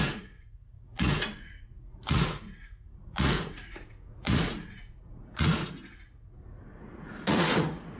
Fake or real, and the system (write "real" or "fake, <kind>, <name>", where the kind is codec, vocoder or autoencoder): fake, vocoder, Vocos